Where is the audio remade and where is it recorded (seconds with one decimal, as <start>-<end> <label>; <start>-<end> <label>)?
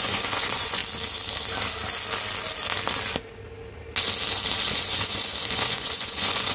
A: 0.0-0.8 remade; 0.8-4.7 recorded; 4.7-6.5 remade